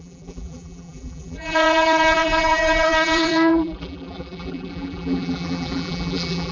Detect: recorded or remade remade